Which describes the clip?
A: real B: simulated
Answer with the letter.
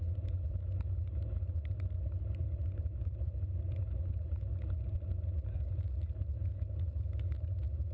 A